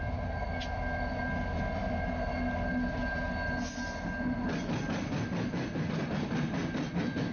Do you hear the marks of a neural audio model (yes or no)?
no